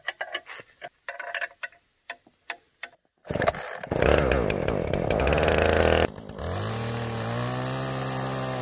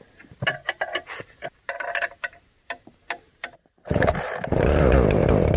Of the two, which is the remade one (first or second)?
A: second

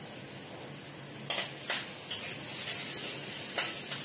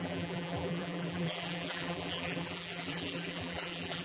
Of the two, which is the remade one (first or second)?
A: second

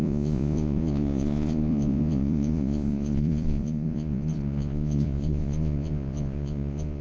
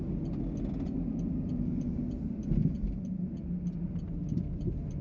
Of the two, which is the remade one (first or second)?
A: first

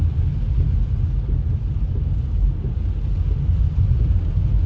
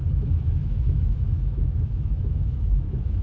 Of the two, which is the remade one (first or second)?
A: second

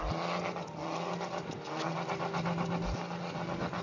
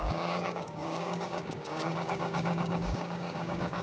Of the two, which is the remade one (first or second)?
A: second